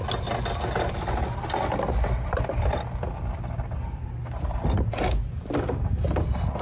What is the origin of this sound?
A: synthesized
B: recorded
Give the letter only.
B